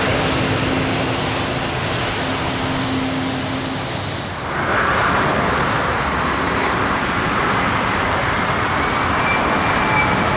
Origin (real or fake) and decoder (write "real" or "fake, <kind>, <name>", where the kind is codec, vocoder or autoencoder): real